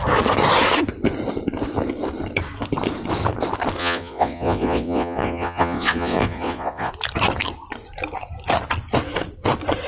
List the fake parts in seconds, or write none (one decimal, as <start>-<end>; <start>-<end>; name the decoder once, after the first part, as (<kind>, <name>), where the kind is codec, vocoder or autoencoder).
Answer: 3.8-6.9 (vocoder, Vocos)